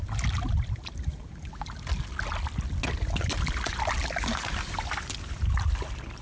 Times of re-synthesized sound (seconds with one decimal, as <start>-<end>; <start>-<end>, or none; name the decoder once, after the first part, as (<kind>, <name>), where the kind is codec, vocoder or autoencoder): none